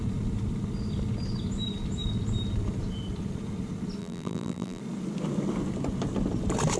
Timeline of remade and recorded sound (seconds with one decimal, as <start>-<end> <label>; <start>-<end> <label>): 0.0-4.0 recorded; 4.0-4.8 remade; 4.8-6.8 recorded